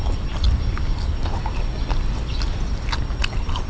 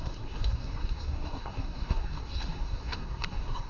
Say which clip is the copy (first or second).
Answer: second